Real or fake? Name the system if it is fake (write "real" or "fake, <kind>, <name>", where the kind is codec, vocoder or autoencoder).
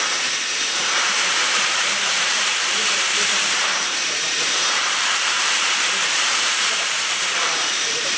fake, vocoder, BigVGAN v2